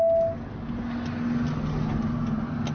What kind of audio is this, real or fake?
real